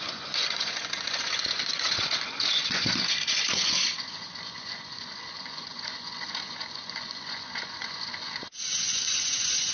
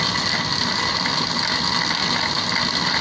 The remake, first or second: first